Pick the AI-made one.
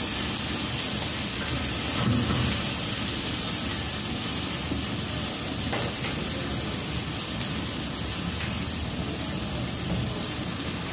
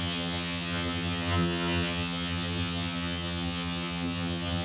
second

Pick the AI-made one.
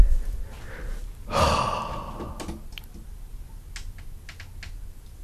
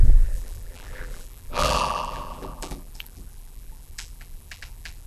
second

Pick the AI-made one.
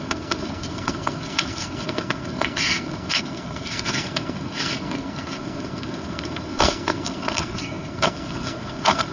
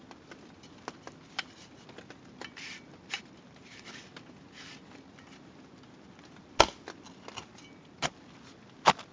first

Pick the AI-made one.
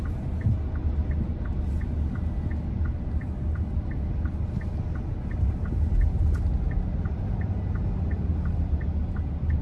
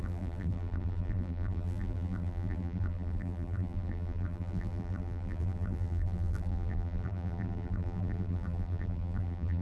second